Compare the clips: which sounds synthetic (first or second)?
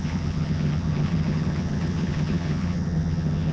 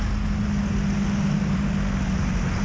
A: first